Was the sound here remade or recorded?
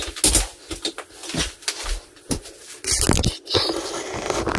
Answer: recorded